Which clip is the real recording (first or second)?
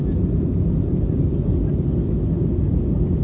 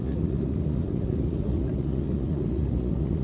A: first